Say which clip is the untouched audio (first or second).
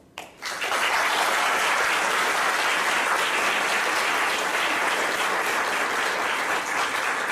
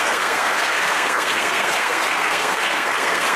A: first